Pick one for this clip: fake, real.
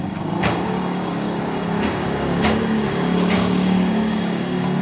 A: fake